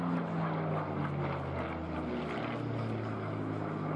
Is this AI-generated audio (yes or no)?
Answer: no